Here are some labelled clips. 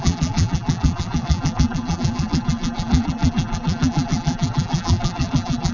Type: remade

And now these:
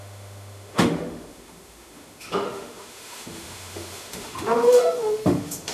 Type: remade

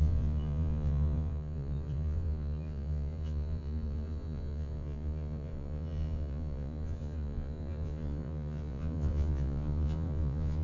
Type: remade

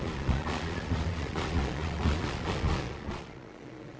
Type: remade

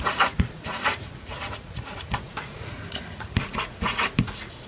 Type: remade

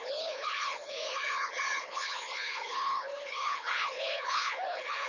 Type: remade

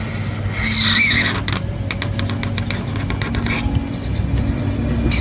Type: recorded